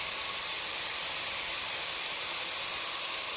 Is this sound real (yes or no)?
no